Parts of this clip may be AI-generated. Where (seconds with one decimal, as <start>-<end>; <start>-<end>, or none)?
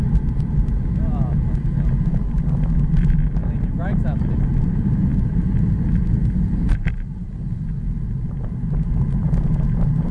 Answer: none